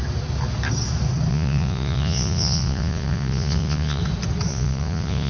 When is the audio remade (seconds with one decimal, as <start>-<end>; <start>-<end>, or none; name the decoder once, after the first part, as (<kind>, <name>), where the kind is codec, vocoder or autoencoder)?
1.3-4.0 (vocoder, Vocos); 4.5-5.3